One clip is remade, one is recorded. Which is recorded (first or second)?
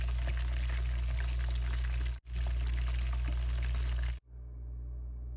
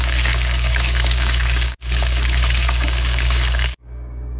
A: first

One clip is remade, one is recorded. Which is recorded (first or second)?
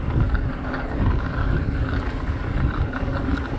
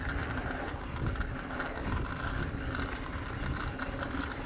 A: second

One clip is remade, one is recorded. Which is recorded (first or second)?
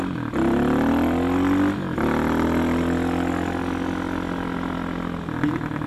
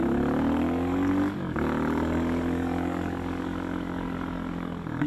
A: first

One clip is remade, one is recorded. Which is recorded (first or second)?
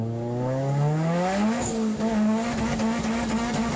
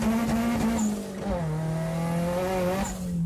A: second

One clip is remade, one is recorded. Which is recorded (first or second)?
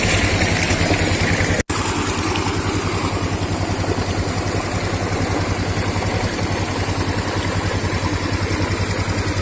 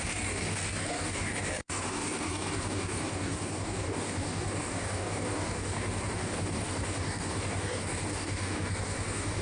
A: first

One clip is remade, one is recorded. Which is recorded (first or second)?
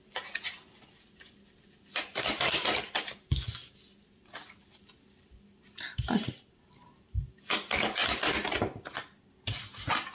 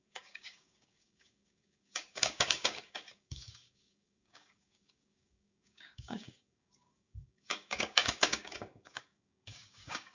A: first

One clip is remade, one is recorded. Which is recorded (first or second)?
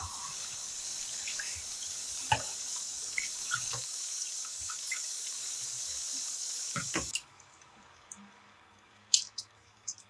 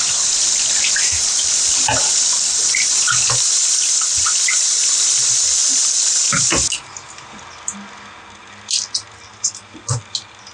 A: second